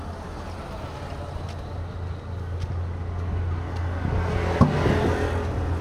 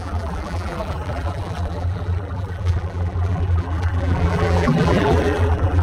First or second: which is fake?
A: second